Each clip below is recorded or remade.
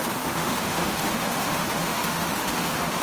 remade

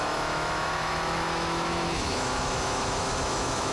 remade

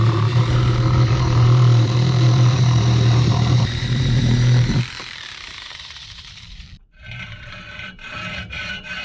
remade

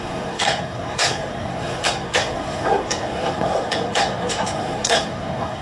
remade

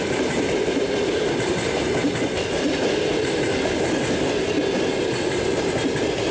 recorded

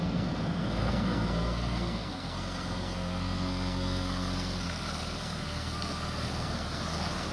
remade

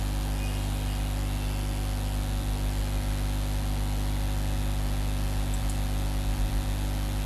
recorded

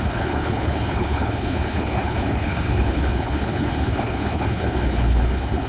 remade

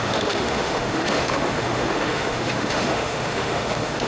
remade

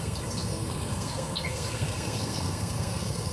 remade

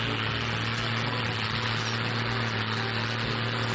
recorded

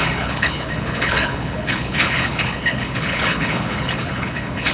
remade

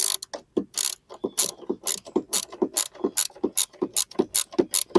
recorded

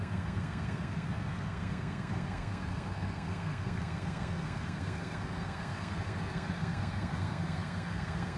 remade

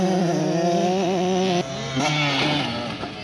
recorded